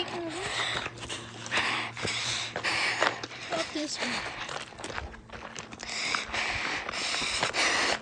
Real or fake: fake